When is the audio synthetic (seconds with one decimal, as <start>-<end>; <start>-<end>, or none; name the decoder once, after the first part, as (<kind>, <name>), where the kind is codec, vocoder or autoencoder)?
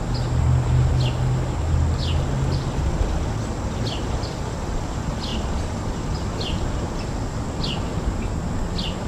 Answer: 5.3-5.9 (vocoder, BigVGAN v2)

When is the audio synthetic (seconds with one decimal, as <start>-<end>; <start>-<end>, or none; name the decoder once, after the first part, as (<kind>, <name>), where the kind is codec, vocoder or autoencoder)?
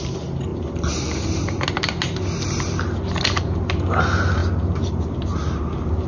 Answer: none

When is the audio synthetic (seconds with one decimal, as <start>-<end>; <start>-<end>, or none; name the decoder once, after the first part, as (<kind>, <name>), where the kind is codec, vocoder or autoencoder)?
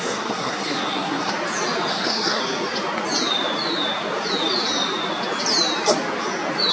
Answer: 0.0-1.3 (codec, SNAC); 1.9-2.4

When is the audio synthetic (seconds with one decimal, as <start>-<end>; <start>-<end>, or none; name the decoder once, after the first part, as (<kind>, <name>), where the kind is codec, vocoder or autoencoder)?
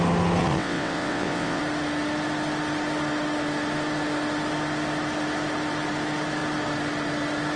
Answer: 0.4-1.6 (vocoder, WaveNeXt)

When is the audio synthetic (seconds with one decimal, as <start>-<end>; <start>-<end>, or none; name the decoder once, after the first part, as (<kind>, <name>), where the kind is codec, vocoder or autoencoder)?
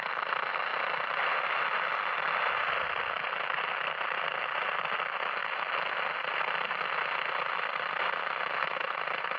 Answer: none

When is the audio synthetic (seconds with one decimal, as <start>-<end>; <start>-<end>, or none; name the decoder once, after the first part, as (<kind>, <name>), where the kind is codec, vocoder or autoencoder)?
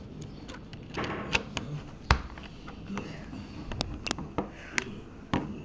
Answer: none